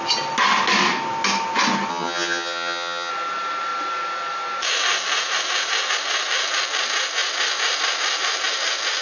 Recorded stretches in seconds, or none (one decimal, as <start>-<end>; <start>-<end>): 0.0-1.9; 3.1-9.0